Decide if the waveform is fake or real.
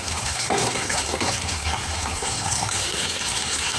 fake